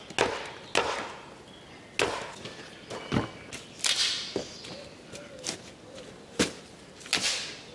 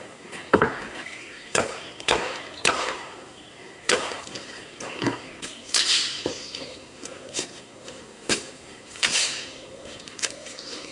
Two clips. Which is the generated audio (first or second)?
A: second